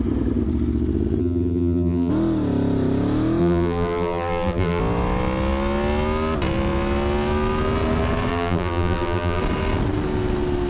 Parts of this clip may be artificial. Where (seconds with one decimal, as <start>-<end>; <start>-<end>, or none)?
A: 1.2-2.1; 3.4-4.8; 8.3-9.4